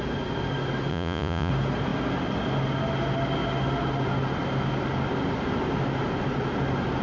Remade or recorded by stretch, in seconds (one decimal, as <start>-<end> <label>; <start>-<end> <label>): 0.0-0.9 recorded; 0.9-1.5 remade; 1.5-7.0 recorded

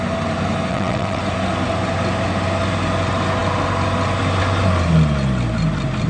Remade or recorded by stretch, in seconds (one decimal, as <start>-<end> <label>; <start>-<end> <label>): 0.0-0.7 recorded; 0.7-1.2 remade; 1.2-6.1 recorded

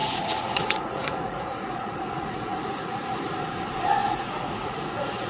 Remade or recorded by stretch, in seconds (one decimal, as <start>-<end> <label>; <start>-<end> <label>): 0.0-3.2 remade; 3.2-4.0 recorded; 4.0-5.3 remade

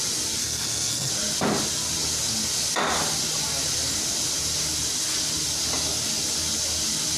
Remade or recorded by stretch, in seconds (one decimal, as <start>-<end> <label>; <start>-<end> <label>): 0.0-0.4 recorded; 0.4-1.1 remade; 1.1-7.2 recorded

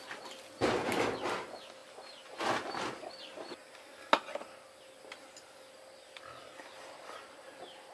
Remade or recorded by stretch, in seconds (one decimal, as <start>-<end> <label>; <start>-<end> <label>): 0.0-7.9 recorded

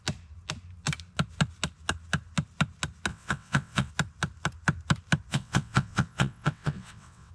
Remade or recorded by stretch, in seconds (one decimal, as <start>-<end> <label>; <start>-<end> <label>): 0.0-3.1 recorded; 3.1-3.9 remade; 3.9-5.3 recorded; 5.3-7.3 remade

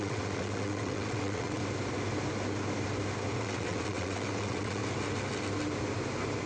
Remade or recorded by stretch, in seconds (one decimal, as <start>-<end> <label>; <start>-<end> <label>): 0.0-1.6 remade; 1.6-3.4 recorded; 3.4-4.8 remade; 4.8-6.5 recorded